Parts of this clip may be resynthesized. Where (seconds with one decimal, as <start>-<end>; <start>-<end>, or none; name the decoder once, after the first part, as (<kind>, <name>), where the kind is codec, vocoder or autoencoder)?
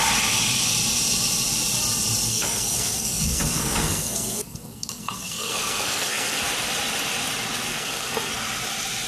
2.3-6.4 (codec, SNAC); 7.7-8.3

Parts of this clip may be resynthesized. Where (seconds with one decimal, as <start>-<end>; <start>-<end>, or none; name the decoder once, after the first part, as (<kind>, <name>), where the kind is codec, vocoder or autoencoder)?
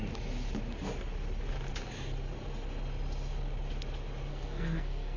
4.3-5.2 (codec, SNAC)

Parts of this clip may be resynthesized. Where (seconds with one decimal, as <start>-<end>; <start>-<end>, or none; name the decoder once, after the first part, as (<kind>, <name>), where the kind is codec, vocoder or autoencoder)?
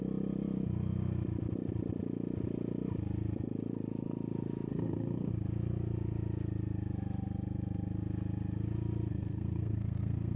4.7-5.3 (codec, SNAC); 9.1-10.4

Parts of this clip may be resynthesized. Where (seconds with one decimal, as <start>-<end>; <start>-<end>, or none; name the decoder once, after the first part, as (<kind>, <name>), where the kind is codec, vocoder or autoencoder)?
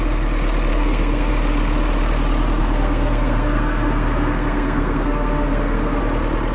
0.7-1.3 (codec, SNAC); 2.6-6.0